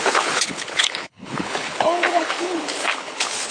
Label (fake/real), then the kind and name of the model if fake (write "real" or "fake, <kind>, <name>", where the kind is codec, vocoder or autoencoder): fake, codec, HILCodec